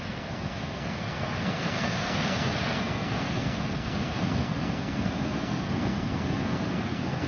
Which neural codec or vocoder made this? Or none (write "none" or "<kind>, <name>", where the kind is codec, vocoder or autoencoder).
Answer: codec, SNAC